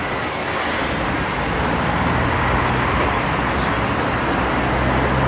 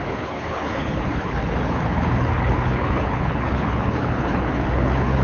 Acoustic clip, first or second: first